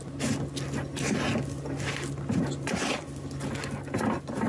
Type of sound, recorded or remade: recorded